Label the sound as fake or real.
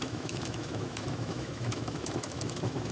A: fake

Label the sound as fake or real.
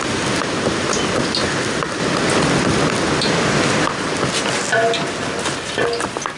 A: real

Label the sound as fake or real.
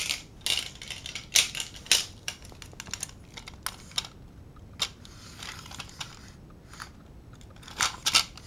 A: real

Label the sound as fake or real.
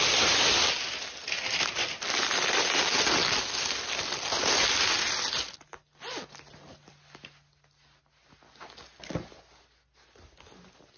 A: real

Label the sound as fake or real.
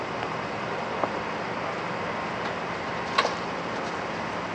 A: real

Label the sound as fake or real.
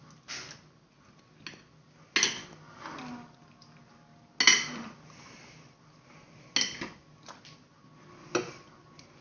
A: real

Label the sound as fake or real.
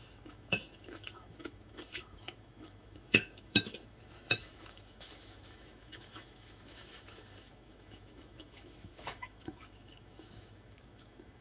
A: fake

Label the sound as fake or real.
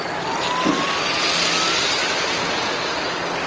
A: real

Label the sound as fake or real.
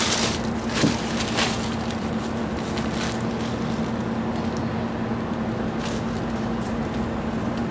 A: real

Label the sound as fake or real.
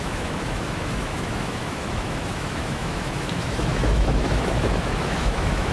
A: fake